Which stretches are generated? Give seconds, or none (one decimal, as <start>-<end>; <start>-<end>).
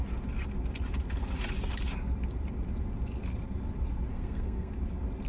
4.1-4.7